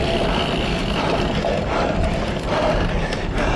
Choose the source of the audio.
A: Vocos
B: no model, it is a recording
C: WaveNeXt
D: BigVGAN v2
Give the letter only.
B